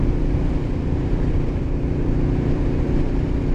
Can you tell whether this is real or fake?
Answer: fake